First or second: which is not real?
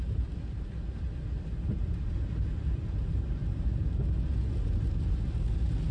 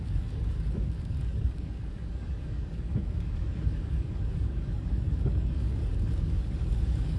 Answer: second